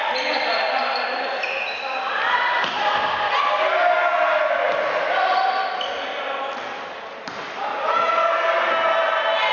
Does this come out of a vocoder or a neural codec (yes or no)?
no